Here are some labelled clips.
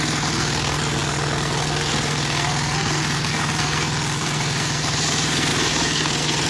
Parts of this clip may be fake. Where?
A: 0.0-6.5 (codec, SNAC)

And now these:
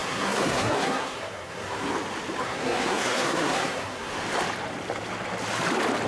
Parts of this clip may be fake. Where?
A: 0.0-1.9 (codec, SNAC); 2.4-4.1

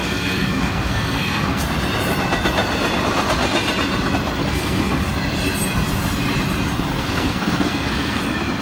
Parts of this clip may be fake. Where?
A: 0.0-1.6 (codec, SNAC); 4.4-5.0; 6.9-8.2

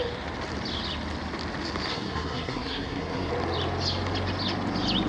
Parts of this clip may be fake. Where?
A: 1.9-3.3 (codec, SNAC)